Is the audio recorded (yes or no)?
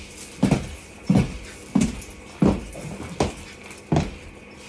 yes